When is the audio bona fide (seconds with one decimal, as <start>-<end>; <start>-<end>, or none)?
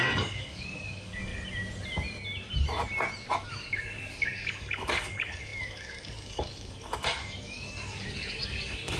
1.3-3.5